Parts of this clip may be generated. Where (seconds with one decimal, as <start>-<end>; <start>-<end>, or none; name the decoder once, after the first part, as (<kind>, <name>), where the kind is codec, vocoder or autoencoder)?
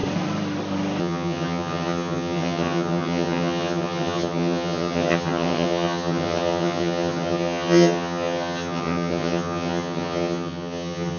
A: 1.0-11.2 (vocoder, HiFi-GAN)